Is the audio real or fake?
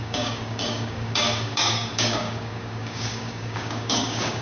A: fake